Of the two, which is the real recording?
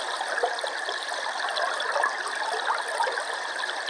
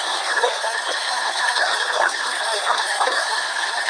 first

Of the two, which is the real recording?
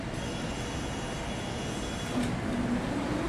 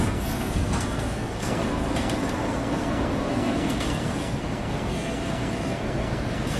first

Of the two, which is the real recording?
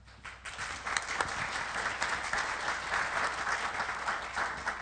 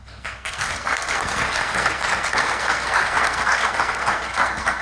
first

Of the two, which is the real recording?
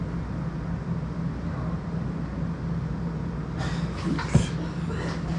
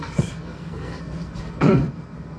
first